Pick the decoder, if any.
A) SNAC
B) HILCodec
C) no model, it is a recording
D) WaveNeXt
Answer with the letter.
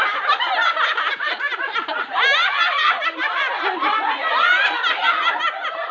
C